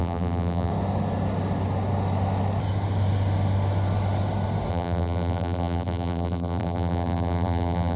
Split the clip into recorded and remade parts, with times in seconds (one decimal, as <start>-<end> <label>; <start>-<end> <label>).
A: 0.0-0.7 remade; 0.7-4.7 recorded; 4.7-8.0 remade